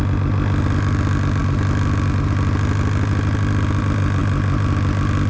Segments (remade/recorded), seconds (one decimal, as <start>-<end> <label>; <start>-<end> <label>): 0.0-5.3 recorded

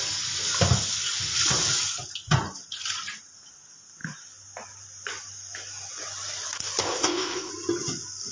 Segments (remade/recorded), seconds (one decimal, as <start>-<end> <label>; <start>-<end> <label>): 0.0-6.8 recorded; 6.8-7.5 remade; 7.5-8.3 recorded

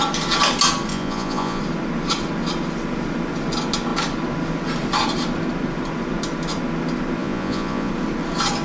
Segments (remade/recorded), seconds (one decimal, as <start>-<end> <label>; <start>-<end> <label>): 0.0-0.9 recorded; 0.9-1.6 remade; 1.6-7.2 recorded; 7.2-7.9 remade; 7.9-8.6 recorded

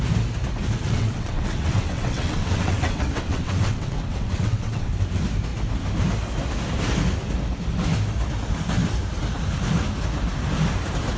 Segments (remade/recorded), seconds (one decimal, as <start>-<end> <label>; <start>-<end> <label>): 0.0-0.8 recorded; 0.8-4.9 remade; 4.9-11.2 recorded

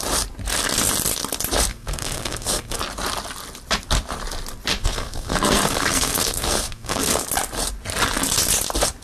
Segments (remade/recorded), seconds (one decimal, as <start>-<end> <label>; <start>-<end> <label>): 0.0-1.7 recorded; 1.7-2.8 remade; 2.8-4.8 recorded; 4.8-7.2 remade; 7.2-9.0 recorded